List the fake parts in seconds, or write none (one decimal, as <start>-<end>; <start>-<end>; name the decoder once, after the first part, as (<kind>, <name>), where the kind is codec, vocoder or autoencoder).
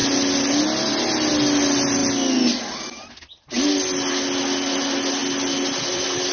none